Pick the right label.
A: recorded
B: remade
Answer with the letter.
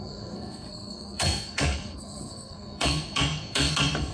B